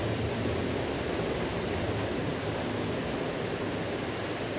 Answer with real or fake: real